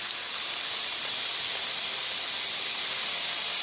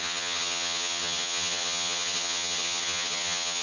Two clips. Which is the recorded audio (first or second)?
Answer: first